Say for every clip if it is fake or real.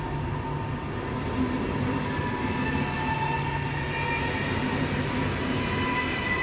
real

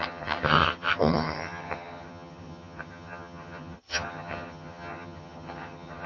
fake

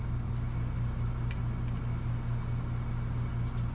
real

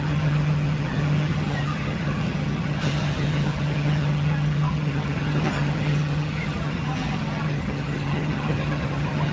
fake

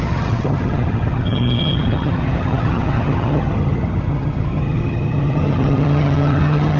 fake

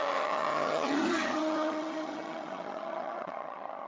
fake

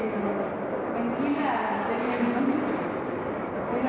real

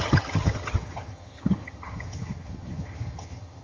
fake